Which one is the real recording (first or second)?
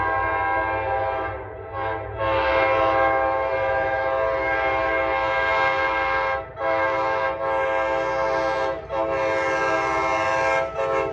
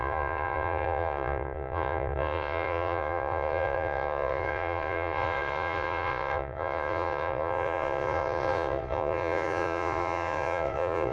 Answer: first